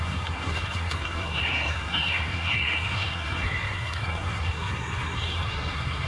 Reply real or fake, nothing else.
fake